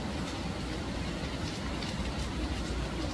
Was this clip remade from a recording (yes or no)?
no